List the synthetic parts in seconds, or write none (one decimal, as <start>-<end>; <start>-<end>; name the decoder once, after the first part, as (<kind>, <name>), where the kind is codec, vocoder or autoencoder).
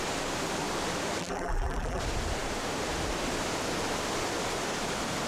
1.2-2.0 (vocoder, BigVGAN v2)